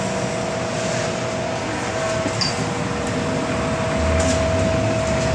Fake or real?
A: real